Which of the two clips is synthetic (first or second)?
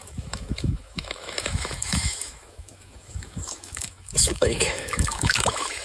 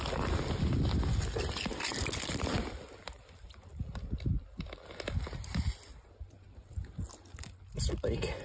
first